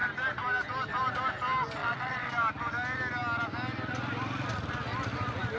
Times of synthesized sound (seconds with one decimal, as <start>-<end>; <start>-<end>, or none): 1.8-2.3